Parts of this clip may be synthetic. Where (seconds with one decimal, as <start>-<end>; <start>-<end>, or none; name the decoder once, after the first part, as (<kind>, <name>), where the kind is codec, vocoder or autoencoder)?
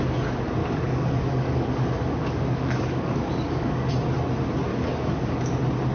0.6-3.9 (codec, DAC); 4.7-5.4